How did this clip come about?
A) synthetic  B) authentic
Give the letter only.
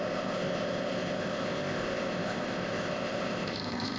A